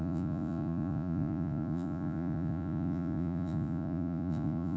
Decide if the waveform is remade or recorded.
remade